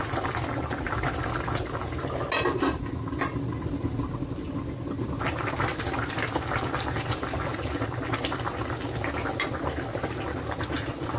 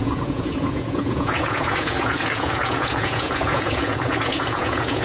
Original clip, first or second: first